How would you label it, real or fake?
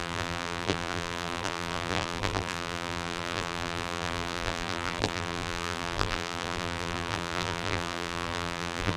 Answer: fake